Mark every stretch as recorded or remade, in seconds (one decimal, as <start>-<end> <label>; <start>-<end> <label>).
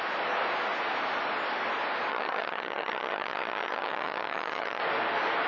0.0-2.1 recorded; 2.1-4.8 remade; 4.8-5.5 recorded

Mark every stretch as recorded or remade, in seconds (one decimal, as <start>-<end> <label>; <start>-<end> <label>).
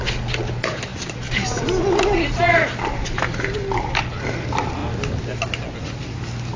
0.0-6.6 recorded